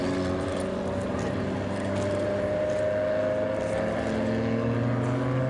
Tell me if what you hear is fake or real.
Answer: real